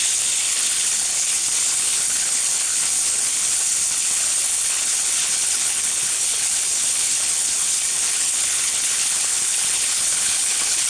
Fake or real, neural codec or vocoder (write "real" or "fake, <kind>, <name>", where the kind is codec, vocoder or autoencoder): fake, codec, HILCodec